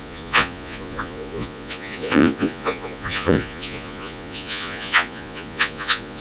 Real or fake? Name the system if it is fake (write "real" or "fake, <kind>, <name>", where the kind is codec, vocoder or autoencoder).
fake, vocoder, Vocos